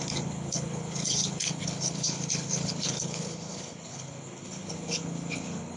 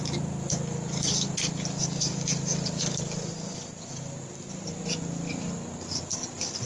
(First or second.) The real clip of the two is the second